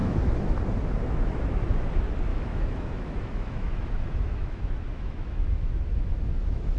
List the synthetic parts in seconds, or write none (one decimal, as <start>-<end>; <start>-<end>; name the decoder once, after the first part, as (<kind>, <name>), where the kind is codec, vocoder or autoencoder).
0.0-0.6 (autoencoder, DAC-VAE); 2.3-6.8